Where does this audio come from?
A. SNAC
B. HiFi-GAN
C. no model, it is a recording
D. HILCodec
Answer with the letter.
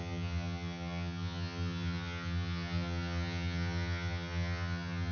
B